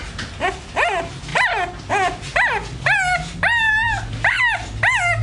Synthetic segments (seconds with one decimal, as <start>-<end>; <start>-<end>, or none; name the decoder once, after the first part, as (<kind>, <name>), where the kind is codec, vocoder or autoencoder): none